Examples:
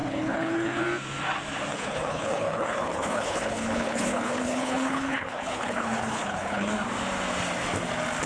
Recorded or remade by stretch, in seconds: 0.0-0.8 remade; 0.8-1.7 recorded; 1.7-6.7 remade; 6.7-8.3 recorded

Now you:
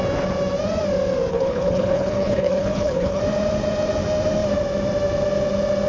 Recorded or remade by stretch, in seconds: 0.0-1.3 recorded; 1.3-3.2 remade; 3.2-5.9 recorded

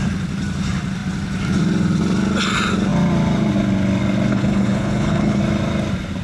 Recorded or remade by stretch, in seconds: 0.0-4.3 recorded; 4.3-5.4 remade; 5.4-6.2 recorded

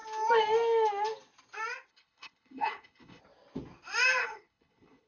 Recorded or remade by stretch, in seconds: 0.0-1.9 recorded; 1.9-3.2 remade; 3.2-4.2 recorded; 4.2-5.1 remade